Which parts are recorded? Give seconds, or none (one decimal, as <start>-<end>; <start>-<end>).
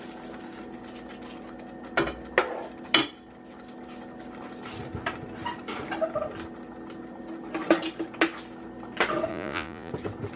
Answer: 0.0-9.3; 9.9-10.4